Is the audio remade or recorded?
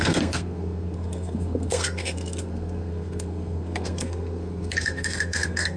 remade